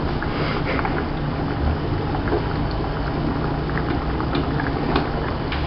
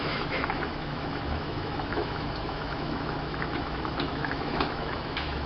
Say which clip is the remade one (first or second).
second